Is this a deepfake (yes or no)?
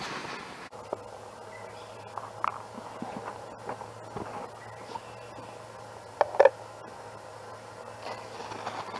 no